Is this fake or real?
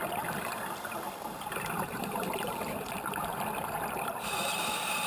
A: fake